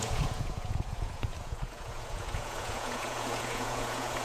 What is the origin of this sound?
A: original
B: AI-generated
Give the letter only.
B